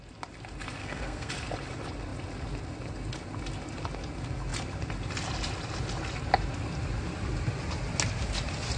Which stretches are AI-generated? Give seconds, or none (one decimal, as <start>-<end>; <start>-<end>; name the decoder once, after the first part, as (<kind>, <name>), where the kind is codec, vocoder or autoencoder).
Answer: 0.8-1.3 (codec, SNAC)